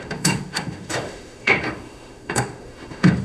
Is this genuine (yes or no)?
no